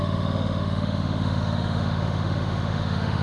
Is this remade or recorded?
remade